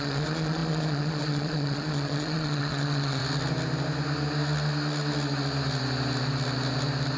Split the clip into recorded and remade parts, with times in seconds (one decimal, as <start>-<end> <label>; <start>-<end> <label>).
0.0-3.2 remade; 3.2-7.2 recorded